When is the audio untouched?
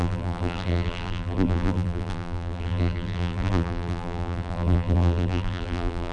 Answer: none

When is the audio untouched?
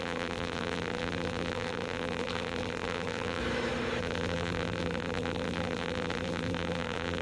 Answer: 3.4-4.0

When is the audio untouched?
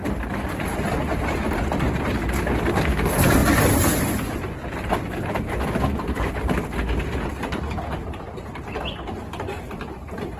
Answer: 0.0-10.4